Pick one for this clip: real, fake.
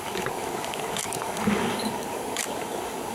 fake